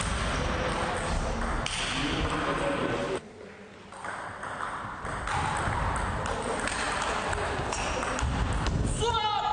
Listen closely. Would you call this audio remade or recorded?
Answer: recorded